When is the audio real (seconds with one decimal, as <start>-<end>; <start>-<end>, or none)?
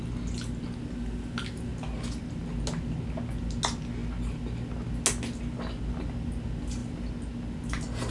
0.0-8.1